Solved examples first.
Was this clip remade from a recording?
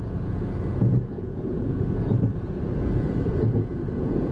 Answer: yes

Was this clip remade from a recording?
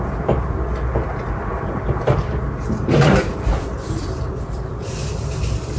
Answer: no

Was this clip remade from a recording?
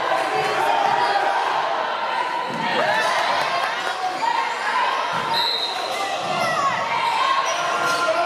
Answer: no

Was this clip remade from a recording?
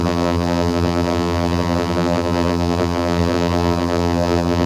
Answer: yes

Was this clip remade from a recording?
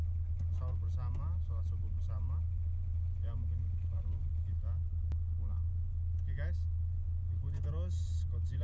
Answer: no